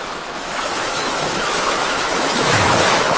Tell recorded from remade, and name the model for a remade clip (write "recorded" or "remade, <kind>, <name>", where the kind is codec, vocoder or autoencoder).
remade, autoencoder, DAC-VAE